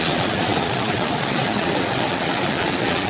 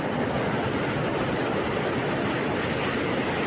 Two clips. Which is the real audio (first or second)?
second